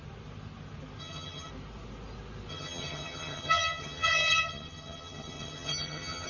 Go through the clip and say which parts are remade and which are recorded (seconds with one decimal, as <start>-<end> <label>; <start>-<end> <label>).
0.0-1.0 recorded; 1.0-1.5 remade; 1.5-2.5 recorded; 2.5-6.3 remade